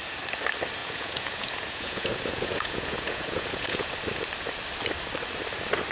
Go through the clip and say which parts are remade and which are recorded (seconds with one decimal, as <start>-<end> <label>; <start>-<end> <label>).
0.0-0.8 recorded; 0.8-3.9 remade; 3.9-5.9 recorded